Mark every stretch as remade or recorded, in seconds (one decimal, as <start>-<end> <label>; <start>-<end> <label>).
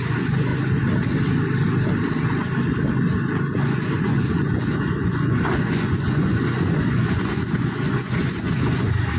0.0-0.5 remade; 0.5-3.4 recorded; 3.4-9.2 remade